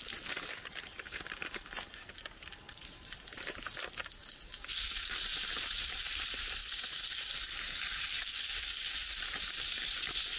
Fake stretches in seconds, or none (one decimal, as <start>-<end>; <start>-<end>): 0.0-4.2; 4.9-6.6; 7.5-8.3; 9.3-10.4